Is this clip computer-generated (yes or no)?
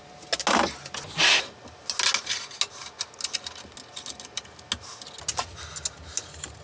no